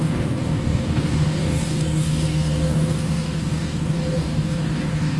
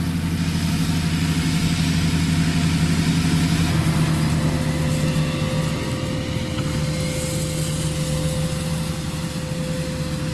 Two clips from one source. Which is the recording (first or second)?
second